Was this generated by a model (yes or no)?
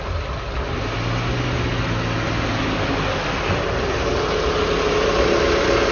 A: no